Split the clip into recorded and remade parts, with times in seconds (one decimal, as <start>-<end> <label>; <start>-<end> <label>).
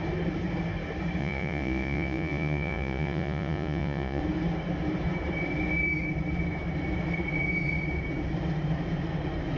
0.0-1.2 recorded; 1.2-4.2 remade; 4.2-9.6 recorded